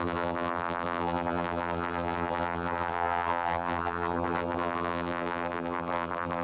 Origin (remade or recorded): remade